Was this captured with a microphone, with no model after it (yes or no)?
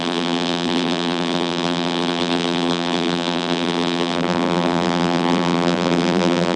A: no